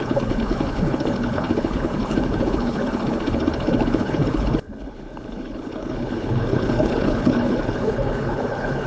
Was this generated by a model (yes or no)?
yes